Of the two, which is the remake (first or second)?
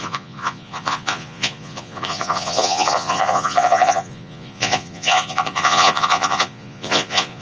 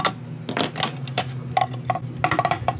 first